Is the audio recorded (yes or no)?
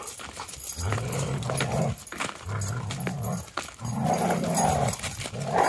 yes